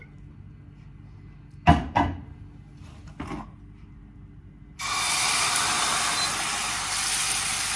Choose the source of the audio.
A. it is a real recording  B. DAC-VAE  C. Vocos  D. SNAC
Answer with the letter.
A